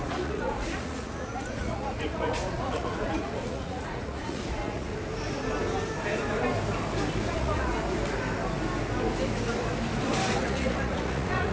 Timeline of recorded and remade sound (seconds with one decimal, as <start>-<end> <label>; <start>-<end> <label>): 0.0-4.9 remade; 4.9-7.3 recorded; 7.3-7.7 remade; 7.7-10.4 recorded; 10.4-11.5 remade